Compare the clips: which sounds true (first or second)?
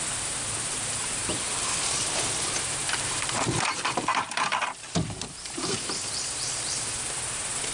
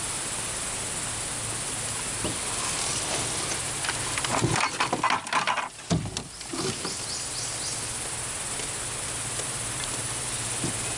second